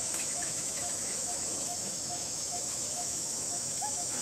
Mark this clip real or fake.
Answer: fake